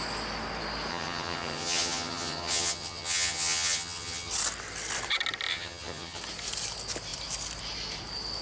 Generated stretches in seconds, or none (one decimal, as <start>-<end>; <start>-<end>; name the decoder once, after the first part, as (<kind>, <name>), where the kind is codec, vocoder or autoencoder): 0.9-4.3 (vocoder, HiFi-GAN); 5.5-6.2